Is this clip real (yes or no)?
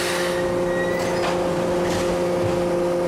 yes